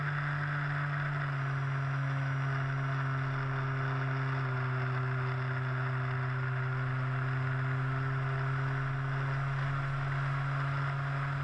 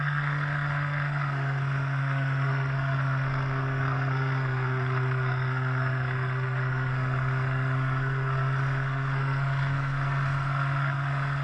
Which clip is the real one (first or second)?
first